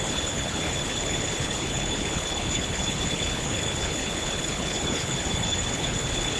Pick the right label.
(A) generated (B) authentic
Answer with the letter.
A